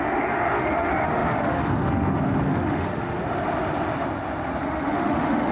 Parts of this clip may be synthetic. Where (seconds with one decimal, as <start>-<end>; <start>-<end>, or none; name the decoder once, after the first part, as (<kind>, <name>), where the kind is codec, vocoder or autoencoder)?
0.0-3.2 (autoencoder, DAC-VAE); 4.6-5.5